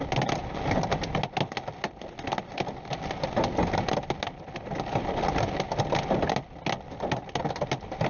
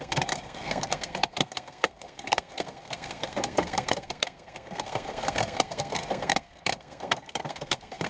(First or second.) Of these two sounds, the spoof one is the second